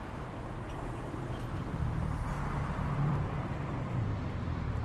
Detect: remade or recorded remade